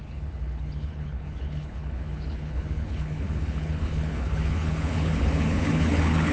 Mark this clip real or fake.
fake